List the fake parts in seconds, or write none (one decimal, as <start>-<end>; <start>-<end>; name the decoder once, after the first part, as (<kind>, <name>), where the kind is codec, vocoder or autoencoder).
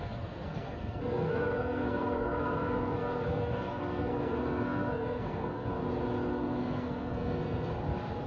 0.0-5.7 (codec, SNAC); 6.3-7.7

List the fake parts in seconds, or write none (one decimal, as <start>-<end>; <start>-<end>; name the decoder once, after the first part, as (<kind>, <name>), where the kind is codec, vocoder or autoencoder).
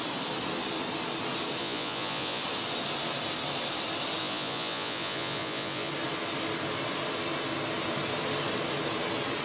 1.6-2.4 (vocoder, Vocos); 4.2-5.9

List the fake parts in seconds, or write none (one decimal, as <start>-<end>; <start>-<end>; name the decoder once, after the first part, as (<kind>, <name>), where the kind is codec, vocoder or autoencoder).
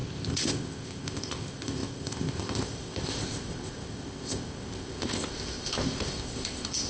0.0-6.9 (codec, ZipCodec)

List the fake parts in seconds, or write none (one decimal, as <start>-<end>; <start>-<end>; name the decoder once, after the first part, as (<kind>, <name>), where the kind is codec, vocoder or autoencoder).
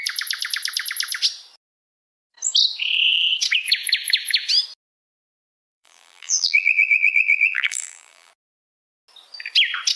5.6-8.3 (vocoder, BigVGAN v2)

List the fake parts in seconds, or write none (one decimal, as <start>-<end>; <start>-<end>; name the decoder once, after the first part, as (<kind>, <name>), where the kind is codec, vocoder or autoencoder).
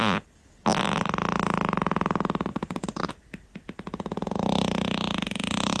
2.5-3.1 (vocoder, Vocos)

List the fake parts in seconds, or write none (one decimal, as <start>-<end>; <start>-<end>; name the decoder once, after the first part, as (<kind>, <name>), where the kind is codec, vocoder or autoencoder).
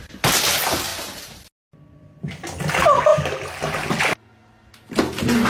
none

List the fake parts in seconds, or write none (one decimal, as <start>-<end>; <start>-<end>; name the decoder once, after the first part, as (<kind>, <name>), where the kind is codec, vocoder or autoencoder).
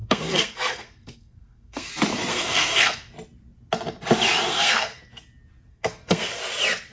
0.0-1.9 (codec, SNAC); 2.3-3.1; 4.5-5.0; 5.7-6.4